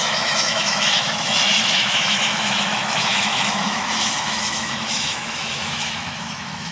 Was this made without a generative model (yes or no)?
no